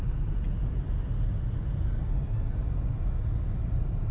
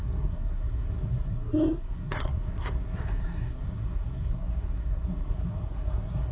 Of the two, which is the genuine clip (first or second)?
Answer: first